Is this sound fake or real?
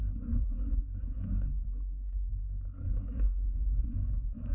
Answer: fake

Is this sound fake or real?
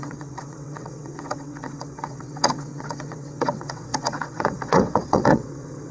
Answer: fake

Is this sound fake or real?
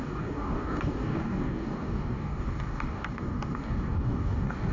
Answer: fake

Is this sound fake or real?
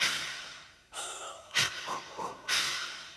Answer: fake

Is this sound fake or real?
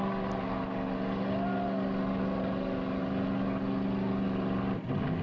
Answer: real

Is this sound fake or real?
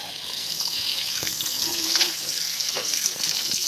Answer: fake